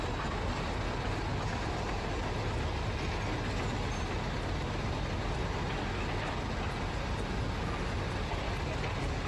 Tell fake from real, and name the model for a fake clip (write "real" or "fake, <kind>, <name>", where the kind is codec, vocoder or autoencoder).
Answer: real